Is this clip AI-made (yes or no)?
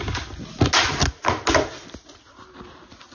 no